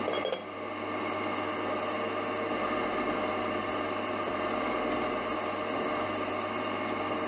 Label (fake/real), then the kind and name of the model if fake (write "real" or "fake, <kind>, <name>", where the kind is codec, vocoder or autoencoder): real